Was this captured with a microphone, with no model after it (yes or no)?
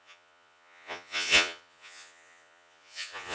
no